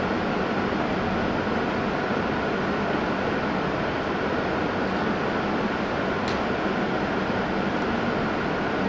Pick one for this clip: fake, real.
real